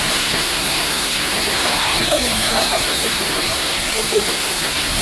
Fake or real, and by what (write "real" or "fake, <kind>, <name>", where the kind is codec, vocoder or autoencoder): fake, codec, SNAC